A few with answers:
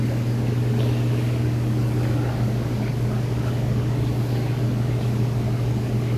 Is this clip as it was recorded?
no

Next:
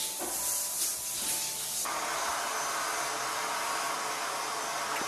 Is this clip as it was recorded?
yes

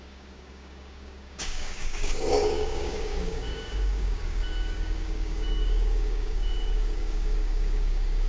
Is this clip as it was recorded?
no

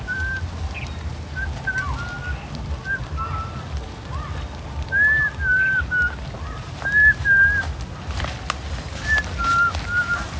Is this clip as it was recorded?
yes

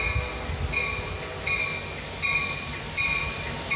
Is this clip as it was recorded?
yes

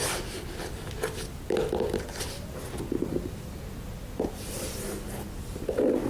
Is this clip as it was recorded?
yes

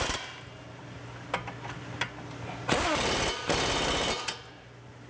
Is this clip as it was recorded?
yes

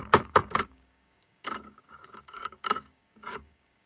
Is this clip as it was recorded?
no